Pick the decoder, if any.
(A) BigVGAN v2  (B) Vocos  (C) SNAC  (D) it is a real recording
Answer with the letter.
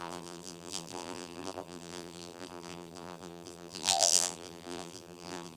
A